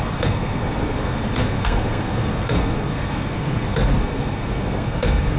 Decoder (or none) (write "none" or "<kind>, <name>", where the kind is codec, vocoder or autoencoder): codec, SNAC